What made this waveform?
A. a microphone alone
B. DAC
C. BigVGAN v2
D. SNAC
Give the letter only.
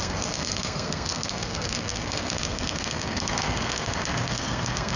D